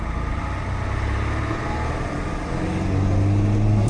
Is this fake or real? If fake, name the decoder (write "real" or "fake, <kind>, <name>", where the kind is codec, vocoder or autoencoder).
real